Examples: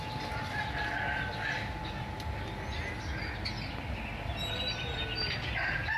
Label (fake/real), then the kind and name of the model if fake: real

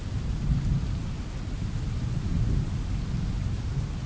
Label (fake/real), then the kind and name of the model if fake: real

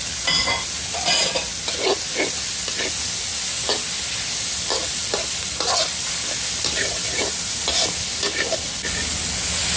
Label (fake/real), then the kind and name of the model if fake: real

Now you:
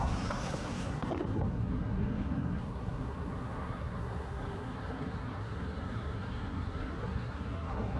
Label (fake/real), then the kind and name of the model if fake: fake, codec, SNAC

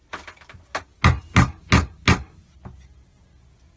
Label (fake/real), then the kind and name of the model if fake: real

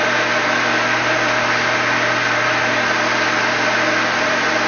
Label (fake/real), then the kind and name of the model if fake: real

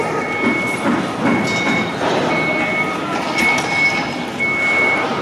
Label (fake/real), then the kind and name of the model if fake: real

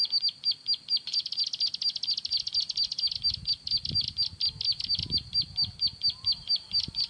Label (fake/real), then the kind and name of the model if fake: real